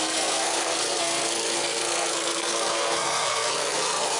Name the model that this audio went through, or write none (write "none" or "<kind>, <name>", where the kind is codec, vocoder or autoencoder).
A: codec, SNAC